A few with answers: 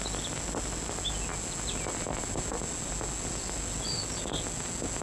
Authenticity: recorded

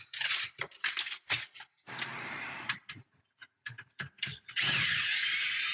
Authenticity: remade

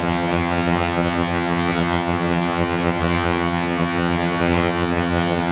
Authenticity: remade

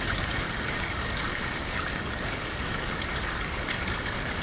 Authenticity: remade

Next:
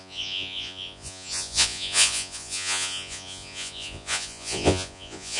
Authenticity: remade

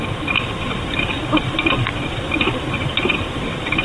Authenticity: recorded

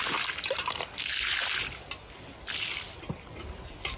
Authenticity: recorded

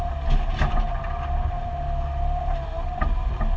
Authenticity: recorded